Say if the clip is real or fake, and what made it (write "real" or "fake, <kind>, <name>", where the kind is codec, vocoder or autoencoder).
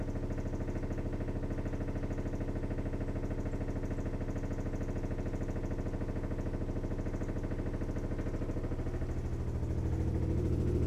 real